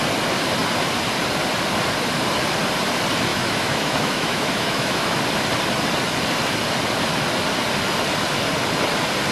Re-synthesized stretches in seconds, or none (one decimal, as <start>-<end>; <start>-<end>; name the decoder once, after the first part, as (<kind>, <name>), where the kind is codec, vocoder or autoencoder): 3.3-5.2 (autoencoder, DAC-VAE)